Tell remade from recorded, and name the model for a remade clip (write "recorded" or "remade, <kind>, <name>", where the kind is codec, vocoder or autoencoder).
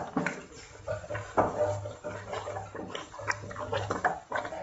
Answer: recorded